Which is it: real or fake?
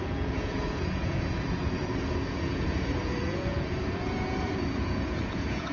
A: fake